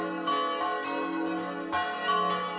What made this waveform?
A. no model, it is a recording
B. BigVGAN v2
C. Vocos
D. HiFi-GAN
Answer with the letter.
A